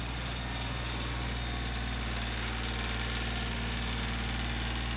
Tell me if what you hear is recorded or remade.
recorded